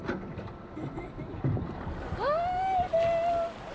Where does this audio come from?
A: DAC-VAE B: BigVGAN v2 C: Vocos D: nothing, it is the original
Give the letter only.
D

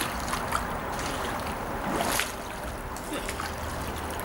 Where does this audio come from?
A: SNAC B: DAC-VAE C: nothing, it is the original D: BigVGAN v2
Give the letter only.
C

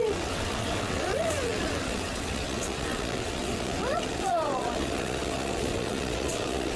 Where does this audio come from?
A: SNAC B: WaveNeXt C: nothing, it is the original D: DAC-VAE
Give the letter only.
B